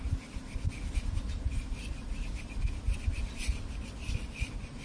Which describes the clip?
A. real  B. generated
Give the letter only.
B